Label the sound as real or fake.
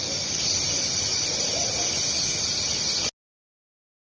real